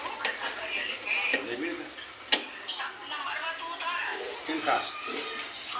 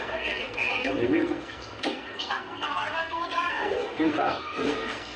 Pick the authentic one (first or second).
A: first